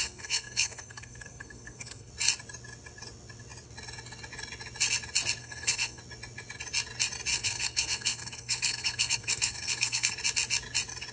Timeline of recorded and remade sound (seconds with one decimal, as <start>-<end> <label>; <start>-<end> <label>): 0.0-2.1 remade; 2.1-5.4 recorded; 5.4-6.0 remade; 6.0-7.3 recorded; 7.3-10.1 remade; 10.1-11.1 recorded